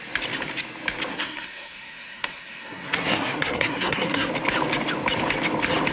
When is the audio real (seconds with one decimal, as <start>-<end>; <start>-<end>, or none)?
0.0-1.1; 4.3-5.9